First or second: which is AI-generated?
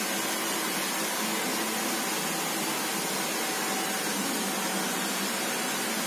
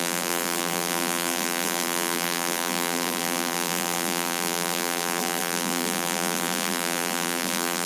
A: second